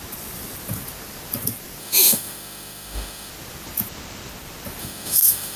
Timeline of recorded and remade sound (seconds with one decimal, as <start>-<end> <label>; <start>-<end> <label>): 0.0-1.8 recorded; 1.8-3.3 remade; 3.3-4.8 recorded; 4.8-5.6 remade